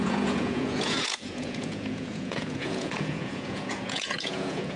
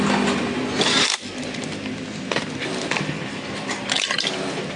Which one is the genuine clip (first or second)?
second